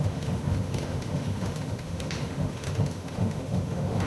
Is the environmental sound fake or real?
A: fake